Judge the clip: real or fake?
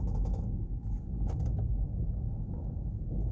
real